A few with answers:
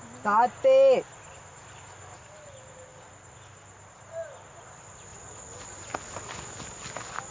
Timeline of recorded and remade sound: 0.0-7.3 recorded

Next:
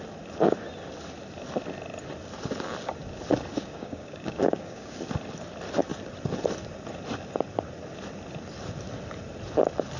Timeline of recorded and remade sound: 0.0-3.5 recorded; 3.5-5.0 remade; 5.0-10.0 recorded

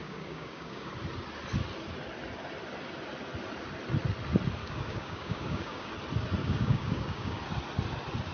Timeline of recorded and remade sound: 0.0-0.9 remade; 0.9-4.6 recorded; 4.6-5.9 remade; 5.9-6.4 recorded; 6.4-7.4 remade; 7.4-8.3 recorded

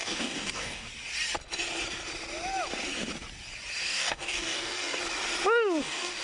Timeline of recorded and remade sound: 0.0-0.9 remade; 0.9-3.8 recorded; 3.8-5.0 remade; 5.0-5.8 recorded; 5.8-6.2 remade

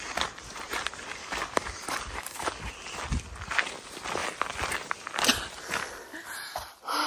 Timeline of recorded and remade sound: 0.0-1.2 recorded; 1.2-2.7 remade; 2.7-7.1 recorded